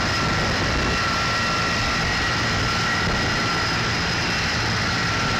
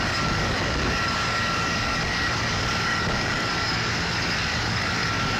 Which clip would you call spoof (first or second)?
second